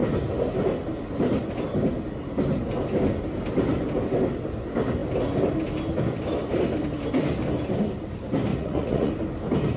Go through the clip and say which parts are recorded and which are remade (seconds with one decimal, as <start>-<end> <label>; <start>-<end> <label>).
0.0-8.5 recorded; 8.5-9.1 remade; 9.1-9.8 recorded